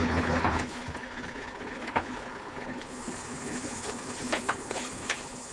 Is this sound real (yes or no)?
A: no